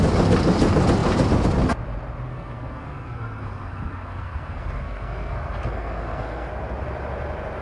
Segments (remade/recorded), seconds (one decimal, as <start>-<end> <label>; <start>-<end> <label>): 0.0-2.3 recorded; 2.3-6.5 remade; 6.5-7.6 recorded